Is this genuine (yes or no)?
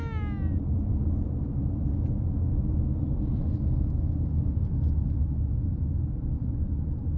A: yes